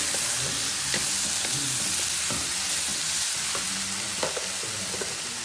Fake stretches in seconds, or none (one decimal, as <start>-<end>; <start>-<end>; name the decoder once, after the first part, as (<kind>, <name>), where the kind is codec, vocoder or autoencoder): none